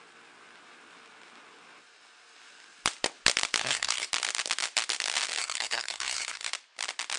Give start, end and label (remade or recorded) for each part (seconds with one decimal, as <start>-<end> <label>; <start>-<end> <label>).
0.0-3.6 recorded; 3.6-4.1 remade; 4.1-5.4 recorded; 5.4-6.5 remade; 6.5-7.2 recorded